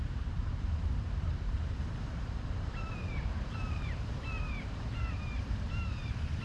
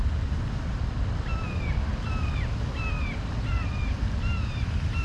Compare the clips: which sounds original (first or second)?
second